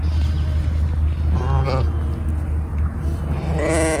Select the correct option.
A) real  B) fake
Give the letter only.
A